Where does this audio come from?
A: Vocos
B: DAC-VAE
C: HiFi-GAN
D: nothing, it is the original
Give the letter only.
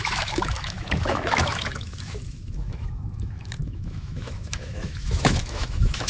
B